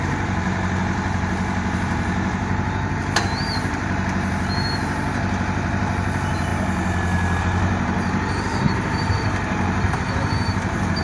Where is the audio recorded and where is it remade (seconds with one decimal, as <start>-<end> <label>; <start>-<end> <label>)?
0.0-6.5 remade; 6.5-7.4 recorded; 7.4-11.0 remade